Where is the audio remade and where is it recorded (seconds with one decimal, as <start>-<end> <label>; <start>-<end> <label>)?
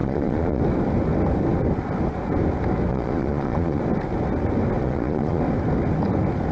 0.0-0.6 remade; 0.6-2.9 recorded; 2.9-3.8 remade; 3.8-4.8 recorded; 4.8-5.4 remade; 5.4-6.5 recorded